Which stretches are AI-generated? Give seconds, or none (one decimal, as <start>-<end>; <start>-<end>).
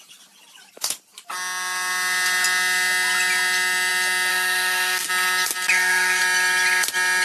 4.3-5.1; 5.7-6.2